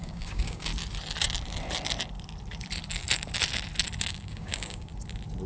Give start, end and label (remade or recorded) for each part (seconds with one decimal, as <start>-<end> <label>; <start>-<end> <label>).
0.0-0.7 remade; 0.7-4.0 recorded; 4.0-4.9 remade; 4.9-5.5 recorded